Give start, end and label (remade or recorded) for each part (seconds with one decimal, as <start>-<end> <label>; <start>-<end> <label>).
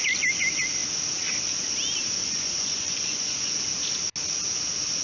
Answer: 0.0-2.2 recorded; 2.2-3.5 remade; 3.5-5.0 recorded